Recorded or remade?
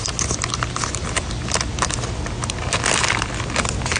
recorded